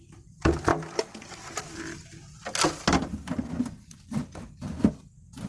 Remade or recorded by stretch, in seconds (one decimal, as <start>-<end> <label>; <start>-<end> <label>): 0.0-5.5 recorded